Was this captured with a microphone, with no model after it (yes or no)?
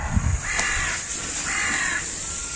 yes